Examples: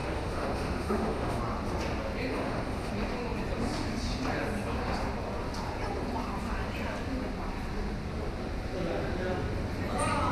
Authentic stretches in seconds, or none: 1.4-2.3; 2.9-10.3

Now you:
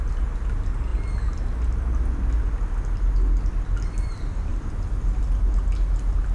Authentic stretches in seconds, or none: 0.0-6.3

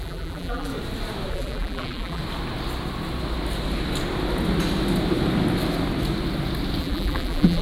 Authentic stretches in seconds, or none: 0.7-1.3; 2.2-6.8

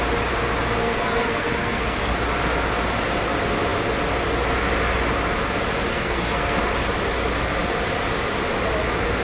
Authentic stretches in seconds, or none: 0.0-0.8; 2.1-5.9; 6.6-9.2

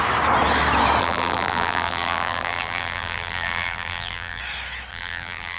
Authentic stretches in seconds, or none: 0.0-1.0; 4.4-4.9

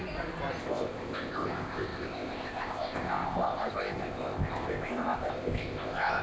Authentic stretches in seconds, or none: 0.0-0.6

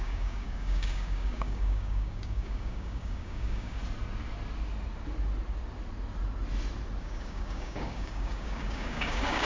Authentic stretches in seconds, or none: 3.8-7.0